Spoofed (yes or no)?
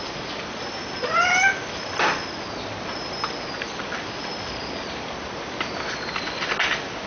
no